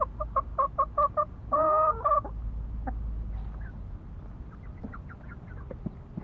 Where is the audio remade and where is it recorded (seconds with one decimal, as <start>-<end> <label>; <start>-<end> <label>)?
0.0-6.2 recorded